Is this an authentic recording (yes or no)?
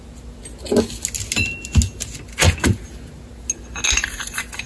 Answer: yes